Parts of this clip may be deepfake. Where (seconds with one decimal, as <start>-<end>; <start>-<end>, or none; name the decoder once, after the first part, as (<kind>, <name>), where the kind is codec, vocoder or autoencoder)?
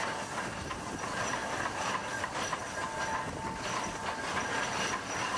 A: none